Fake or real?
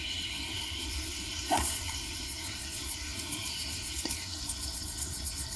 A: fake